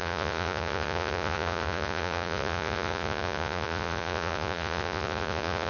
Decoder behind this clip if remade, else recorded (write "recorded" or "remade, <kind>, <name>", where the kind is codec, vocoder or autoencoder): remade, vocoder, Vocos